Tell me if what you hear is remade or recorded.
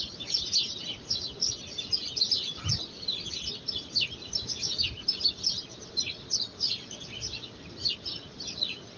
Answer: recorded